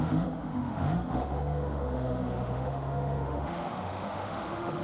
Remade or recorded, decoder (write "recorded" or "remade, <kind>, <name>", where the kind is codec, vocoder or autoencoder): remade, autoencoder, DAC-VAE